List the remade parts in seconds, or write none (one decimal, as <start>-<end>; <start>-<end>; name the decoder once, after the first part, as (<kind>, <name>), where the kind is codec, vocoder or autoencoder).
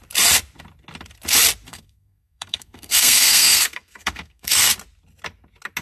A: 1.7-4.7 (codec, SNAC)